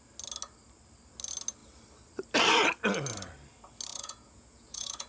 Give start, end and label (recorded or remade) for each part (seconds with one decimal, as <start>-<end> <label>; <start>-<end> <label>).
0.0-3.9 recorded; 3.9-5.1 remade